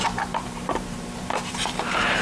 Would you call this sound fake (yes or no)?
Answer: yes